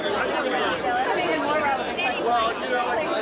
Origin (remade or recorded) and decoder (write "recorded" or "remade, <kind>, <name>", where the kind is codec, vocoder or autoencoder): recorded